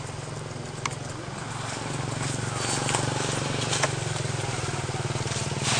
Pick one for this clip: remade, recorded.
recorded